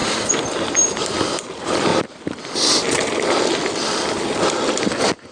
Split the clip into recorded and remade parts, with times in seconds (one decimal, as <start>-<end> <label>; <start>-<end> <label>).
0.0-5.3 recorded